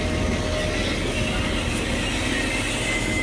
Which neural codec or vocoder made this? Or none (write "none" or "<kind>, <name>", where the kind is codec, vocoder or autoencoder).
none